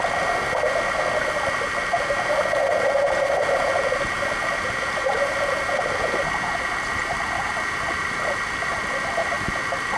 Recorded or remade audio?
recorded